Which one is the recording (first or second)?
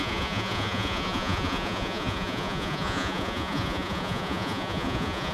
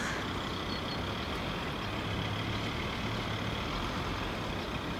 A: second